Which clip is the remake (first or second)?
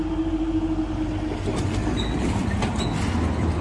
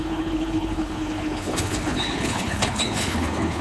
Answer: second